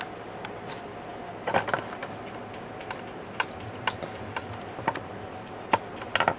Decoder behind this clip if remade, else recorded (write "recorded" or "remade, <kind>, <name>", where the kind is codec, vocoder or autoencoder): recorded